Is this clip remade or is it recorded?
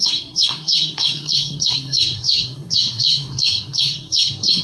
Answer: remade